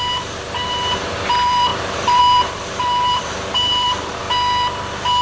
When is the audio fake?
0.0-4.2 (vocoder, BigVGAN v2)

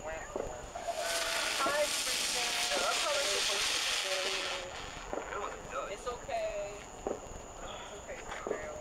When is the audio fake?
4.0-7.3 (vocoder, BigVGAN v2)